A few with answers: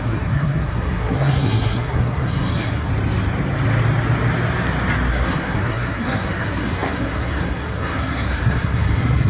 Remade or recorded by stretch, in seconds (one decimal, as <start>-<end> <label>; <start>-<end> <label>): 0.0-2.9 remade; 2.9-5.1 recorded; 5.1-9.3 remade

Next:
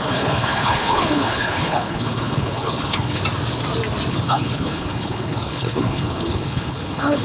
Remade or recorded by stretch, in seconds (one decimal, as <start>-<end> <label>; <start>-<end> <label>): 0.0-3.2 remade; 3.2-4.1 recorded; 4.1-7.2 remade

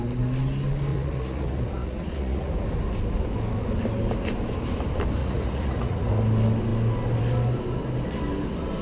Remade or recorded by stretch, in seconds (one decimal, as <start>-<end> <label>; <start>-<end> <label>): 0.0-0.9 recorded; 0.9-2.5 remade; 2.5-5.2 recorded; 5.2-6.1 remade; 6.1-8.8 recorded

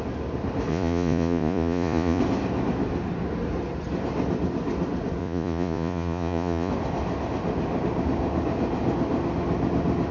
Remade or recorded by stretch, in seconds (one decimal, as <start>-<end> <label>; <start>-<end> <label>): 0.0-0.7 recorded; 0.7-2.2 remade; 2.2-5.2 recorded; 5.2-6.7 remade; 6.7-10.1 recorded

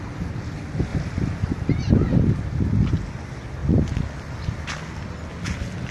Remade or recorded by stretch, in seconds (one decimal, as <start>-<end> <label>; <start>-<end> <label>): 0.0-5.9 recorded

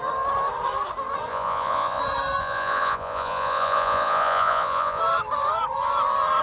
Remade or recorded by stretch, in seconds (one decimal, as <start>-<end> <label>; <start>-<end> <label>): 0.0-1.3 recorded; 1.3-2.0 remade; 2.0-2.4 recorded; 2.4-5.0 remade; 5.0-6.4 recorded